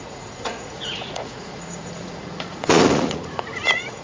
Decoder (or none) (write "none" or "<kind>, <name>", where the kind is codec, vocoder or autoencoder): vocoder, Vocos